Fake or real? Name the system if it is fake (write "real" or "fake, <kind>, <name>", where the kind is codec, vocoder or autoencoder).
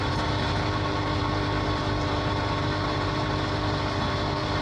fake, vocoder, BigVGAN v2